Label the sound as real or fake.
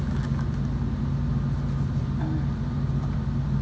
real